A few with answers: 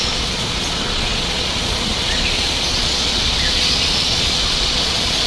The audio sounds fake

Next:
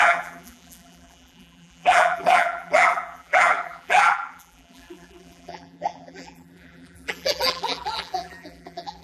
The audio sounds fake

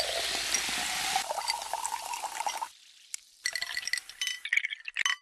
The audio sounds real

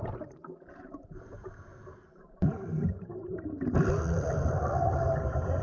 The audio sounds real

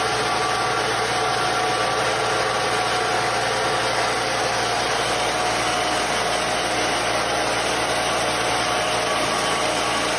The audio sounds real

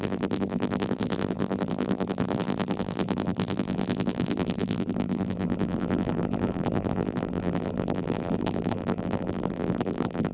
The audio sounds fake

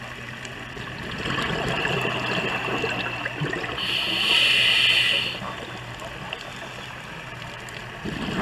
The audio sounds real